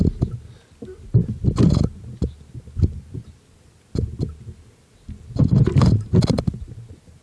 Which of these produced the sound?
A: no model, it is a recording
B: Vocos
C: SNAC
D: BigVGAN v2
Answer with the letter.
A